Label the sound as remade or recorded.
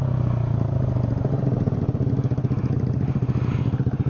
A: recorded